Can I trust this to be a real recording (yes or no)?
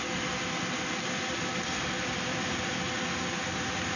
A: yes